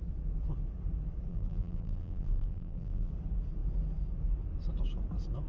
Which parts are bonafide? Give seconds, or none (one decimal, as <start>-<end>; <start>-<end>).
0.0-1.3; 3.1-5.5

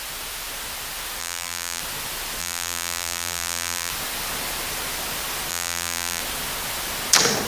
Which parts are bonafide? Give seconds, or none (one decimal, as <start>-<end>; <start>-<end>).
0.0-1.2; 1.8-2.4; 3.9-5.5; 6.2-7.5